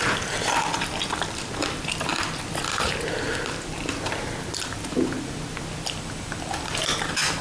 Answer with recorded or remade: remade